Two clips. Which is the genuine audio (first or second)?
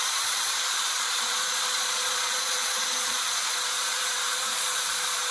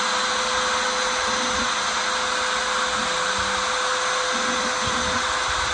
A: second